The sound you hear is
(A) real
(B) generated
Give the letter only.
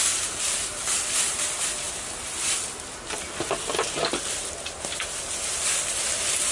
A